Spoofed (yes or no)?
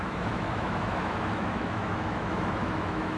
yes